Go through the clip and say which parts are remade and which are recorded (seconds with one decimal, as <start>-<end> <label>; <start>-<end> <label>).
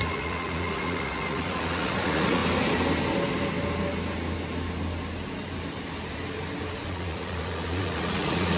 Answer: 0.0-2.4 remade; 2.4-6.9 recorded; 6.9-8.6 remade